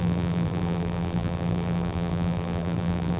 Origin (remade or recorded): remade